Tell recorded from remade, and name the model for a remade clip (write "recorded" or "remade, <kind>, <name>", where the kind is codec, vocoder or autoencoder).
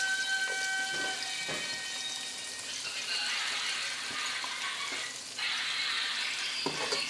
recorded